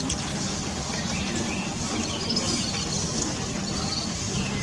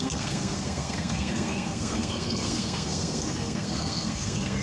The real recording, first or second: first